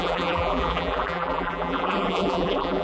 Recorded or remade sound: remade